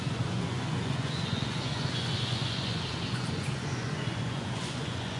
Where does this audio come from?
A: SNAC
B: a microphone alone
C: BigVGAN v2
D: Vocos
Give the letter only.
D